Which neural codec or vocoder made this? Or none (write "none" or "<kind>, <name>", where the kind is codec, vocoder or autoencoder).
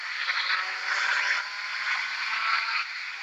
none